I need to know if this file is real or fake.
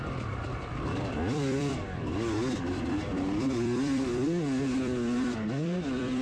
fake